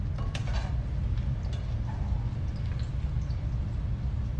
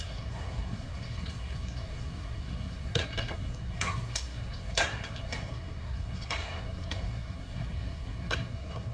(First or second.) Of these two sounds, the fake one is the second